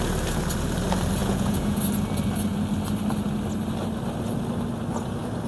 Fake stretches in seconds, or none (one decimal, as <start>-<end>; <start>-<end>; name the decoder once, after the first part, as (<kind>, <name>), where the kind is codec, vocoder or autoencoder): 1.2-1.8 (vocoder, Vocos)